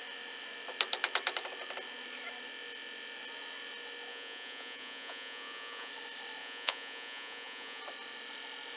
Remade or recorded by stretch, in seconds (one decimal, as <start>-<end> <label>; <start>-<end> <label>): 0.0-4.1 recorded; 4.1-5.9 remade; 5.9-6.4 recorded; 6.4-7.8 remade; 7.8-8.8 recorded